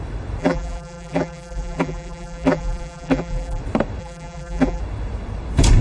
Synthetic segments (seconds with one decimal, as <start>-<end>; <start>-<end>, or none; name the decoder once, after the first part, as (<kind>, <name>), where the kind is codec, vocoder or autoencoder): 0.4-3.6 (vocoder, BigVGAN v2); 4.0-4.8